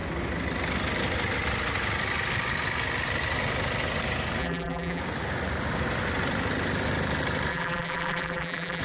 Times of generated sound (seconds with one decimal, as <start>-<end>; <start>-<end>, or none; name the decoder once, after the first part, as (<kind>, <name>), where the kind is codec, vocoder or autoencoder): 4.4-5.0 (vocoder, BigVGAN v2); 7.5-8.8